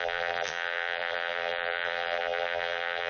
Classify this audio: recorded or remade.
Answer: remade